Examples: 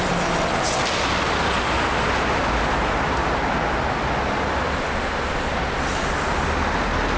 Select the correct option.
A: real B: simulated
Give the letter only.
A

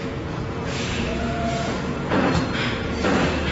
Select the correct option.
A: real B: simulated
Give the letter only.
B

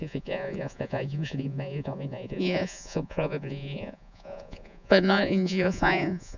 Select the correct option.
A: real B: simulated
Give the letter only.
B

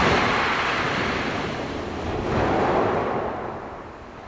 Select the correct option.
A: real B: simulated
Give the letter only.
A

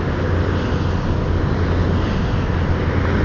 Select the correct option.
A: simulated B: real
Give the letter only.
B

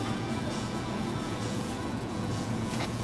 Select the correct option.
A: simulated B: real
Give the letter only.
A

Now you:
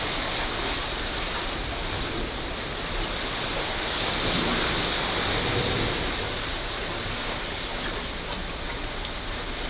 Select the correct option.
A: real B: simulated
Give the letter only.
A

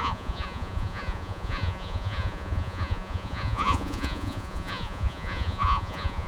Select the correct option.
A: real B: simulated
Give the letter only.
B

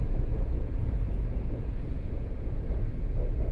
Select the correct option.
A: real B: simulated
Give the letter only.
B